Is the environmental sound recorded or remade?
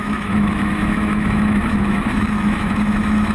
remade